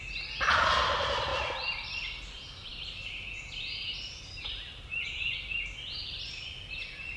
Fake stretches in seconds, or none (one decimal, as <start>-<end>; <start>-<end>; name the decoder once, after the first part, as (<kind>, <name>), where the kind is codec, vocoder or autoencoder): 1.3-2.2 (vocoder, BigVGAN v2)